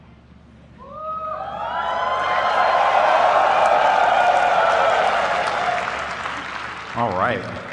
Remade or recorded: recorded